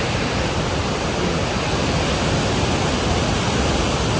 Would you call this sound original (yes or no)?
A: yes